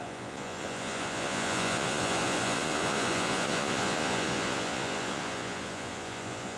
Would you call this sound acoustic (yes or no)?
no